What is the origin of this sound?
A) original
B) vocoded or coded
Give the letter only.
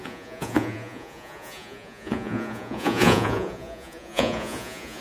B